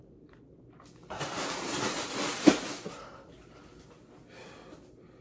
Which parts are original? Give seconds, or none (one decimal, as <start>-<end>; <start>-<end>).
0.0-5.2